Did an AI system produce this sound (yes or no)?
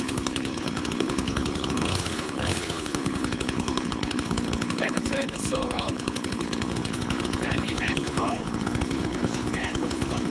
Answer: yes